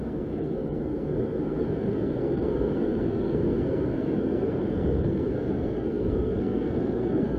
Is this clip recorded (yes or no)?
no